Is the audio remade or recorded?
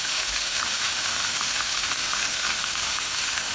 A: remade